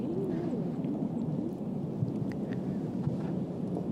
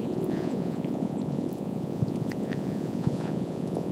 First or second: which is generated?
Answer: second